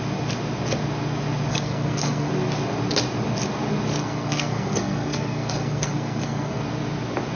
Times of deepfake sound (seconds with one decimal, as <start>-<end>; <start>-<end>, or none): 1.5-2.3; 4.0-6.6